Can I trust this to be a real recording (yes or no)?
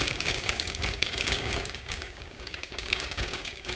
no